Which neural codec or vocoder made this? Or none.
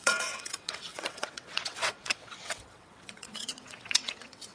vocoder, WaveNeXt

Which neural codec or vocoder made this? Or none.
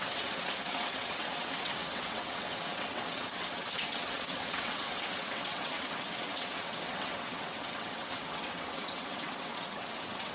vocoder, WaveNeXt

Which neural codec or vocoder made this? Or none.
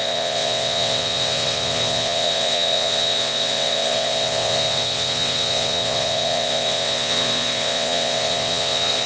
vocoder, WaveNeXt